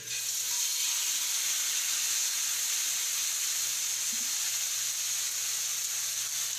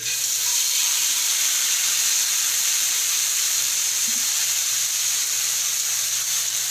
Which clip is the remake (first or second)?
second